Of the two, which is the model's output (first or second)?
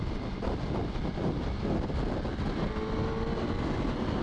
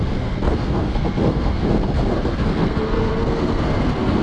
second